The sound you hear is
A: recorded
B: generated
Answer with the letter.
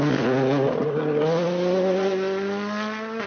A